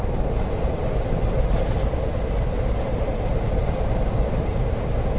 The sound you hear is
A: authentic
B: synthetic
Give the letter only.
A